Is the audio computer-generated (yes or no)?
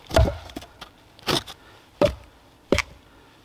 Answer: yes